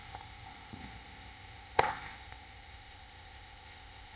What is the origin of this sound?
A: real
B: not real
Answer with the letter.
B